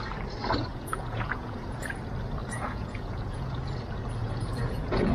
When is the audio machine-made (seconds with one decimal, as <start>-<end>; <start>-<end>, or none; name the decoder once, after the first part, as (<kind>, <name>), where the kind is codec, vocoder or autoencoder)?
0.7-2.0 (vocoder, Vocos); 2.4-3.5; 4.2-5.1